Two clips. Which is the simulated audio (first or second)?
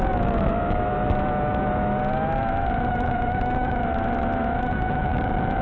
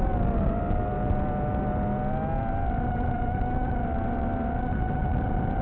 first